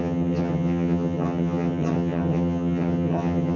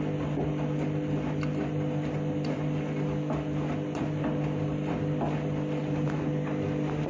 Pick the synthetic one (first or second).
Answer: first